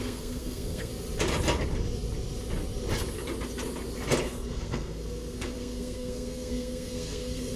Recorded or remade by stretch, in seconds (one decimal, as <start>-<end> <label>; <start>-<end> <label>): 0.0-0.9 remade; 0.9-4.2 recorded; 4.2-7.6 remade